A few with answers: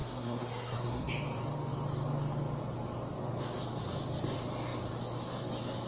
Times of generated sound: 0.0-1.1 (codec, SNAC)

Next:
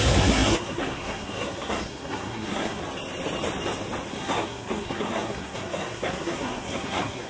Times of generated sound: 0.0-2.8 (codec, SNAC); 4.1-7.3

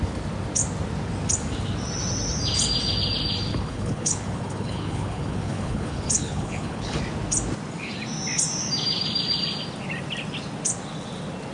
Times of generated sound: 3.5-7.0 (codec, HILCodec)

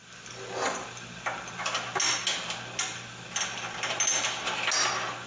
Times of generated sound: none

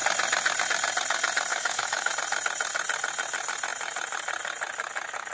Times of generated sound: 1.5-2.1 (autoencoder, DAC-VAE)